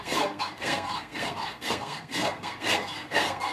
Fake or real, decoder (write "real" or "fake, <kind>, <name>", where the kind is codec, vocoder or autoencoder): fake, codec, SNAC